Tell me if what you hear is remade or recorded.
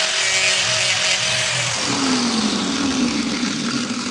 recorded